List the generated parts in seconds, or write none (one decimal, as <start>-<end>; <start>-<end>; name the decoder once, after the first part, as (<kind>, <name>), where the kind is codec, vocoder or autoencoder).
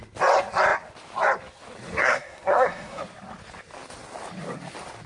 2.0-3.0 (codec, SNAC)